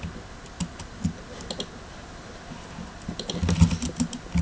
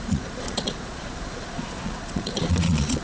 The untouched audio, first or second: first